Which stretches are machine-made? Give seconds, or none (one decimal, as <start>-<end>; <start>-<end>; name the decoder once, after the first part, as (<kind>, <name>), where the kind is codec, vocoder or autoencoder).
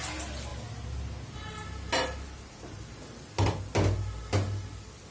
none